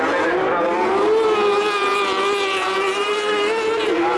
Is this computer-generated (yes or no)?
no